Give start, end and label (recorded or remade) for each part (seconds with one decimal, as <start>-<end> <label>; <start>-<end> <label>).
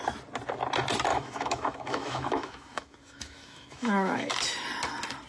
0.0-1.1 recorded; 1.1-4.3 remade; 4.3-5.3 recorded